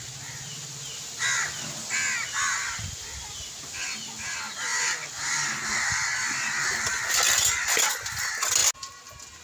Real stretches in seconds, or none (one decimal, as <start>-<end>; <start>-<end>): 0.0-4.7; 7.9-9.4